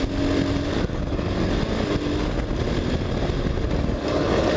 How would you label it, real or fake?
real